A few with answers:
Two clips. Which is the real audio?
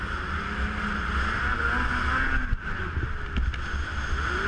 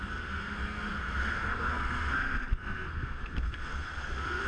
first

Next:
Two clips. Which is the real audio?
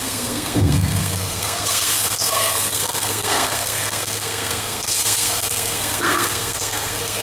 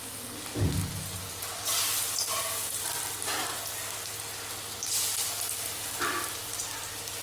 second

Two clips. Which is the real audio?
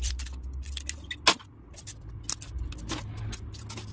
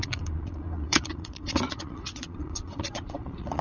first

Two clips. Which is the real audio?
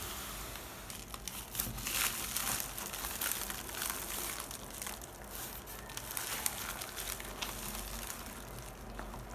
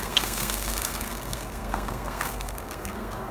first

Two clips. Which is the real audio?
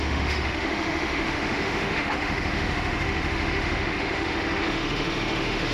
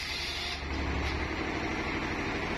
second